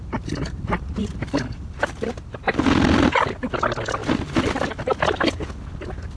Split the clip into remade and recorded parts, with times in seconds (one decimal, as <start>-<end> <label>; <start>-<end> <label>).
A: 0.0-1.0 recorded; 1.0-1.9 remade; 1.9-4.0 recorded; 4.0-4.8 remade; 4.8-6.2 recorded